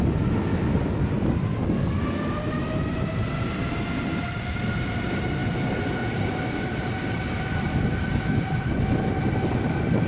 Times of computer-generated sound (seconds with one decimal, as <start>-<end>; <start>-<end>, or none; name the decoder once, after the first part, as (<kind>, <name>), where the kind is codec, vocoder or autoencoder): none